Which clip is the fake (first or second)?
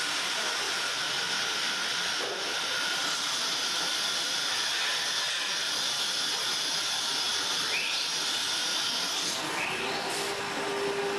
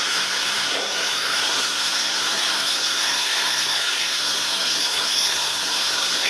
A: second